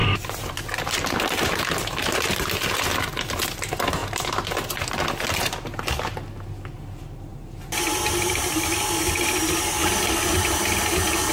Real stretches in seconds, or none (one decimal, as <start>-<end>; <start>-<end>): 2.4-11.3